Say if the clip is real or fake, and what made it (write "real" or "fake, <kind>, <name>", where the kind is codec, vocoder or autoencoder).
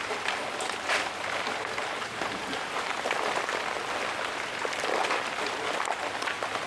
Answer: real